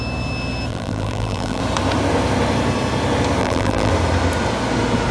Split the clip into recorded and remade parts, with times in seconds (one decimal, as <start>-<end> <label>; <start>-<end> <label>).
0.0-0.7 recorded; 0.7-1.6 remade; 1.6-3.4 recorded; 3.4-3.9 remade; 3.9-5.1 recorded